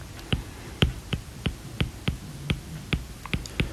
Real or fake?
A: fake